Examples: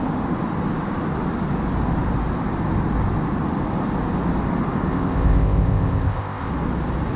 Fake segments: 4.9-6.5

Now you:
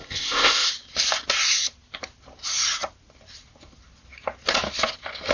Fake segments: 0.0-0.7

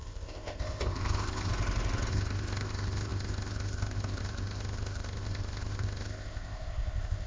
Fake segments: 0.0-1.5; 2.1-7.3